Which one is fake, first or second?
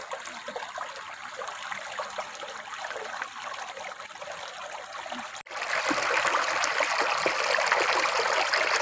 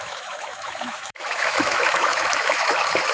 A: second